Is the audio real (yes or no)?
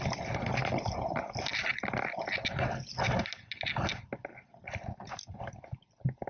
yes